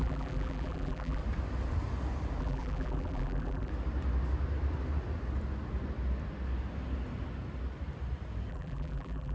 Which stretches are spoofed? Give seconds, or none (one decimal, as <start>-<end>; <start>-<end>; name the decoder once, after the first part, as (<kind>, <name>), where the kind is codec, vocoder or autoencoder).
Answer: 0.0-1.2 (vocoder, BigVGAN v2); 2.4-3.7; 8.5-9.3